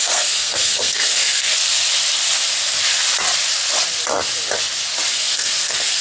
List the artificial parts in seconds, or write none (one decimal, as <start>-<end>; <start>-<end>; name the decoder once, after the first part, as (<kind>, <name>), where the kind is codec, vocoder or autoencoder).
0.0-1.5 (codec, SNAC); 5.1-6.0